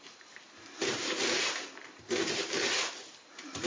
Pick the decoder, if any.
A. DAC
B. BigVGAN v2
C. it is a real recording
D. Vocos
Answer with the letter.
B